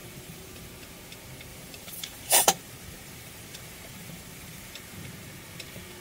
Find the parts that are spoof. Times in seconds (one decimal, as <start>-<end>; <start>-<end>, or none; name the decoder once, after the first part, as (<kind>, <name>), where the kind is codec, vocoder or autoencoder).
0.0-0.6 (vocoder, BigVGAN v2); 1.5-5.1